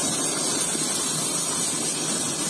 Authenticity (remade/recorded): recorded